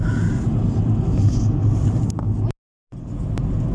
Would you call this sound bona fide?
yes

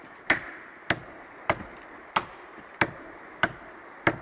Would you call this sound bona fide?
yes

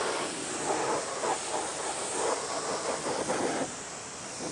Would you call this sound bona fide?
yes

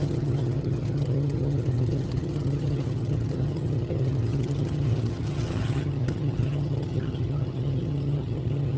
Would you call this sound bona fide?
no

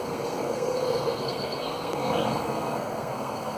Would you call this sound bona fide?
no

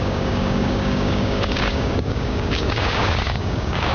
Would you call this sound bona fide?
no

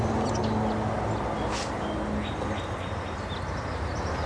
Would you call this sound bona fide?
yes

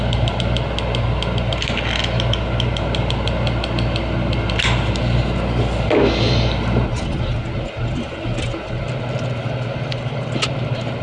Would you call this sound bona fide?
yes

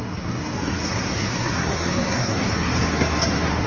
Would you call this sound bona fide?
no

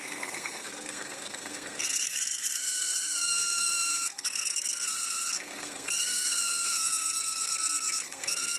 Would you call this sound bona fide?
no